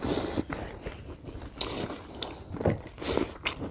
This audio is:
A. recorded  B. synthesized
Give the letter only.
A